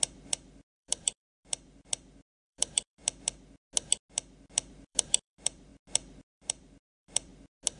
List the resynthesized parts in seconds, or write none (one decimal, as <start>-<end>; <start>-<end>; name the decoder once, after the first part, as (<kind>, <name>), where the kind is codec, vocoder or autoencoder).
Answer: 0.0-3.0 (vocoder, BigVGAN v2); 4.7-5.7; 6.2-7.3